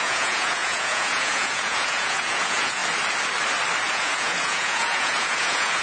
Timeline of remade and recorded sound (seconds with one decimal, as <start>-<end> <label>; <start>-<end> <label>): 0.0-2.8 remade; 2.8-3.9 recorded; 3.9-5.8 remade

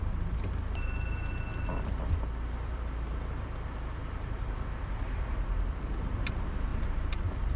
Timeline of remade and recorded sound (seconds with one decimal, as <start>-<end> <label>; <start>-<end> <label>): 0.0-1.5 recorded; 1.5-6.0 remade; 6.0-7.6 recorded

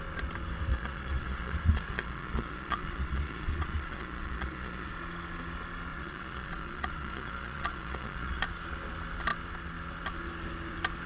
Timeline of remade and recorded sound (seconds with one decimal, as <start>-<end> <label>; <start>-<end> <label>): 0.0-0.7 recorded; 0.7-4.9 remade; 4.9-5.9 recorded; 5.9-8.4 remade; 8.4-11.1 recorded

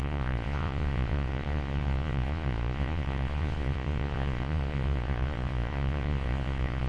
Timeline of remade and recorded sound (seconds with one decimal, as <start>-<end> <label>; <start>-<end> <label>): 0.0-6.9 remade

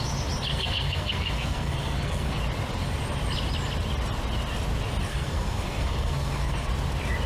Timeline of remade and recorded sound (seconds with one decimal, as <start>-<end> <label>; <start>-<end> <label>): 0.0-0.5 recorded; 0.5-2.4 remade; 2.4-5.1 recorded; 5.1-6.7 remade; 6.7-7.3 recorded

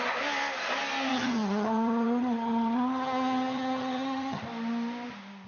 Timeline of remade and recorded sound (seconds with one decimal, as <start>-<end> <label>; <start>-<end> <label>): 0.0-1.1 recorded; 1.1-4.4 remade; 4.4-5.5 recorded

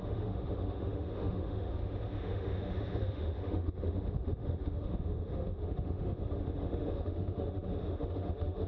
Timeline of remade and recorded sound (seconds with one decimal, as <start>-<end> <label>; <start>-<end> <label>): 0.0-8.7 remade